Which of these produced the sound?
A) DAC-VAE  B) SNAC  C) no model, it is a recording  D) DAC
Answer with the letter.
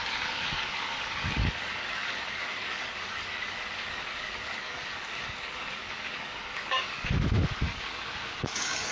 D